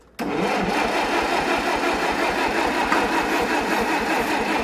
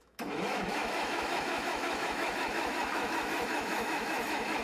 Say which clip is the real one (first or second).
first